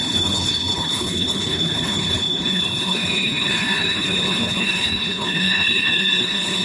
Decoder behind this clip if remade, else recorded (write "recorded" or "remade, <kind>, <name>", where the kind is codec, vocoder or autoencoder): remade, codec, HILCodec